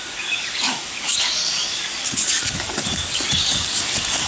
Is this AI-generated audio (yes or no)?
yes